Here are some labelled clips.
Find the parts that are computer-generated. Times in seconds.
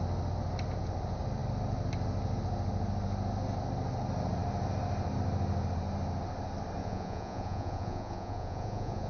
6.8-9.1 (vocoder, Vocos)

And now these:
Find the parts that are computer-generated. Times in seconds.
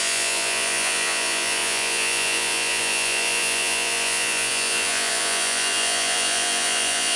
0.0-7.2 (vocoder, Vocos)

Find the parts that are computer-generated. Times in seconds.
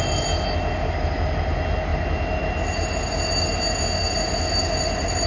none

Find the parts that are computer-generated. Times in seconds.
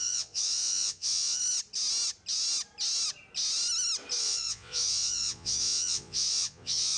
0.0-1.4 (vocoder, Vocos); 4.2-7.0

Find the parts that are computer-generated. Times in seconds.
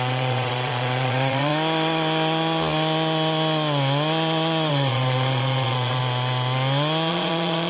0.0-1.5 (vocoder, Vocos); 4.7-6.0; 7.1-7.7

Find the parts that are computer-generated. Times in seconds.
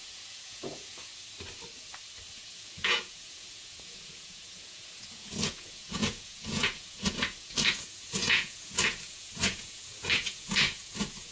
0.0-1.1 (vocoder, Vocos); 2.3-11.3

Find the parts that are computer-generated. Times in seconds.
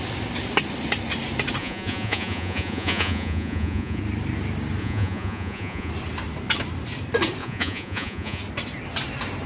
1.6-4.0 (vocoder, Vocos); 4.8-5.9; 7.4-8.4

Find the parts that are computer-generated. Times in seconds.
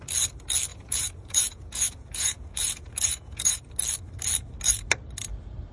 0.7-3.6 (vocoder, Vocos)